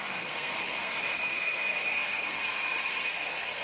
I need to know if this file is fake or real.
fake